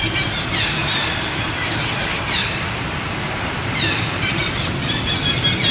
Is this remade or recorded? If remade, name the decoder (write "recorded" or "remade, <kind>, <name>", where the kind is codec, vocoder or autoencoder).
remade, vocoder, BigVGAN v2